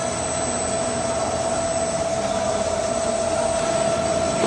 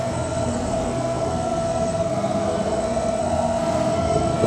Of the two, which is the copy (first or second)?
second